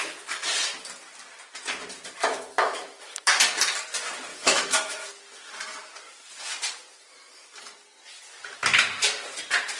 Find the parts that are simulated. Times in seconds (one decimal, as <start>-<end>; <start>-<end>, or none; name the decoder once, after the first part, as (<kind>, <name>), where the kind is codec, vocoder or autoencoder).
2.3-3.3 (autoencoder, DAC-VAE); 4.3-5.1